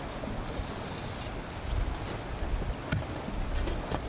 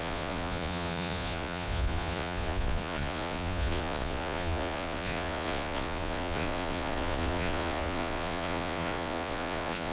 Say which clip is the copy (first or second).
second